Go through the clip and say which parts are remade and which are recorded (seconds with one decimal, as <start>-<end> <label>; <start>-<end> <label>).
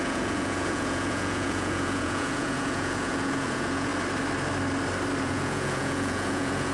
0.0-3.9 remade; 3.9-5.2 recorded; 5.2-6.7 remade